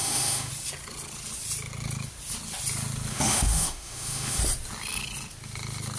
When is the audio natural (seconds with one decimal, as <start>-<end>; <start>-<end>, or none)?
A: 0.5-3.1; 4.4-6.0

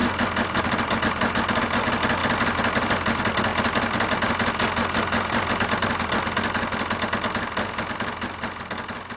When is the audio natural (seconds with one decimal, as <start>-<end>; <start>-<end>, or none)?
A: 0.0-9.2

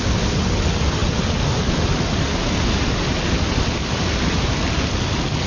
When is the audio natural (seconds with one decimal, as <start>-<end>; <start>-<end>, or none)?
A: 0.0-5.5